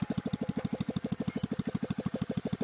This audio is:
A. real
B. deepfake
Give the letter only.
A